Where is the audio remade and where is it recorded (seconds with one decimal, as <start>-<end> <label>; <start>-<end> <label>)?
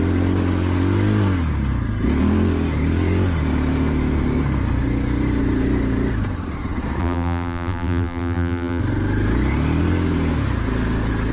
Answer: 0.0-7.0 recorded; 7.0-8.8 remade; 8.8-11.3 recorded